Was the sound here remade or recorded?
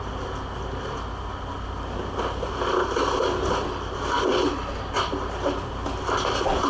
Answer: recorded